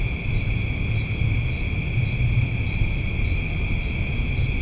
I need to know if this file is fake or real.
real